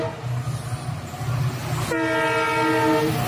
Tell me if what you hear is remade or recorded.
recorded